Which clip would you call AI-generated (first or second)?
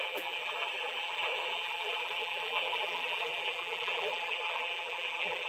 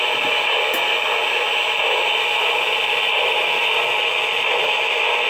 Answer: first